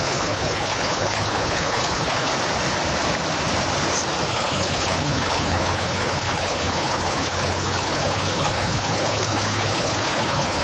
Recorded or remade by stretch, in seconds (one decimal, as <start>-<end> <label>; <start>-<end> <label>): 0.0-2.3 remade; 2.3-4.3 recorded; 4.3-10.6 remade